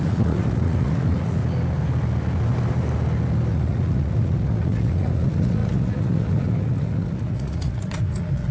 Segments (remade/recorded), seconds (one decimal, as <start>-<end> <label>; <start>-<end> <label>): 0.0-1.4 remade; 1.4-3.5 recorded; 3.5-8.5 remade